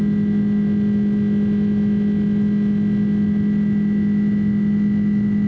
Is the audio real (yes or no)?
yes